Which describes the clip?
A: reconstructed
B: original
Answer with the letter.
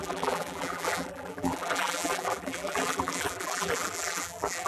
A